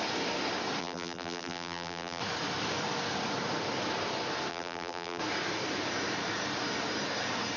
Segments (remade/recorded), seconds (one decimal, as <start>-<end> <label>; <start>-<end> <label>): 0.0-0.8 recorded; 0.8-2.2 remade; 2.2-4.5 recorded; 4.5-5.2 remade; 5.2-7.6 recorded

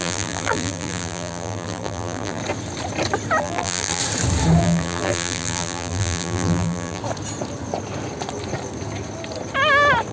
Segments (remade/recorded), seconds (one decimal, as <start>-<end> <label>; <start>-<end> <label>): 0.0-2.4 remade; 2.4-3.4 recorded; 3.4-4.0 remade; 4.0-4.6 recorded; 4.6-7.0 remade; 7.0-10.1 recorded

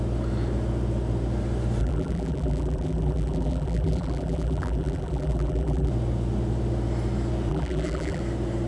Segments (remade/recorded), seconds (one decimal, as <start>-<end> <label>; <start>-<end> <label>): 0.0-1.8 recorded; 1.8-5.9 remade; 5.9-7.5 recorded; 7.5-8.2 remade; 8.2-8.7 recorded

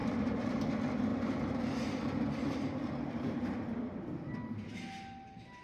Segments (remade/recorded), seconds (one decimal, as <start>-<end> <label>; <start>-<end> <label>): 0.0-0.6 remade; 0.6-1.1 recorded; 1.1-4.0 remade; 4.0-5.6 recorded